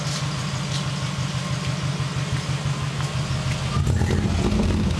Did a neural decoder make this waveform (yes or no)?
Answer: no